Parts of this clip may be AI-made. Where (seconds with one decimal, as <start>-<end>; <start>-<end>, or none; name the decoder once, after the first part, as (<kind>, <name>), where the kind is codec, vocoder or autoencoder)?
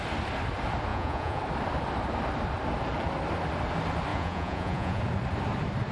0.9-1.4 (vocoder, Vocos); 4.1-5.0